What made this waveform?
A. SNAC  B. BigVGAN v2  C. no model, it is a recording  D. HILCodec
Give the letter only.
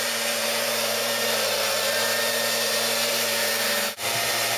B